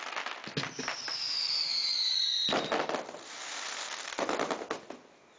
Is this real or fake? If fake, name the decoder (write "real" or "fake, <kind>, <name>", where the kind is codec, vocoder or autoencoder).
real